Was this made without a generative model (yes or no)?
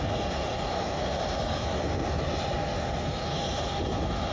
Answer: yes